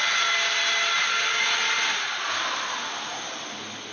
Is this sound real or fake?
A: real